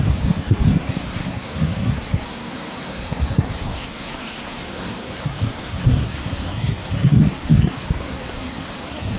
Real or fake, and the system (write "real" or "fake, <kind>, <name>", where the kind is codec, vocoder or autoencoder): fake, codec, SNAC